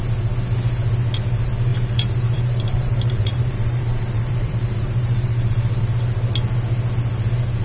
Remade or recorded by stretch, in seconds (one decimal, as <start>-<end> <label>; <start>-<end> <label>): 0.0-1.7 recorded; 1.7-5.8 remade; 5.8-7.6 recorded